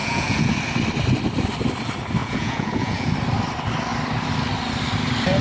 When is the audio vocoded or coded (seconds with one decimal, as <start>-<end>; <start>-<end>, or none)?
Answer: 0.0-0.5; 2.2-3.1